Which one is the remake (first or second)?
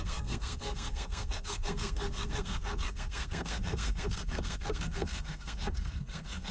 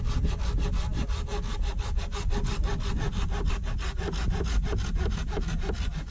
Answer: first